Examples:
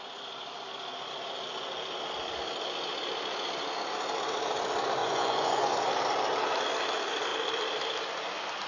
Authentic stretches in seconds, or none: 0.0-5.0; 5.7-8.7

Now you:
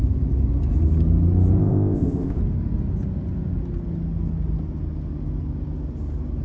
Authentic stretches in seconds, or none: 0.0-1.6; 2.4-6.4

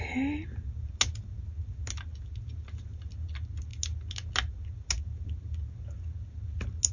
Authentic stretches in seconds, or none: 0.0-6.9

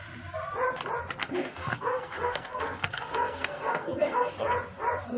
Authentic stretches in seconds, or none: 0.0-1.2; 4.3-5.2